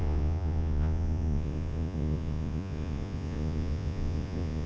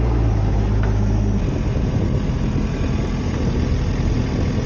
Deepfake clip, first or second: first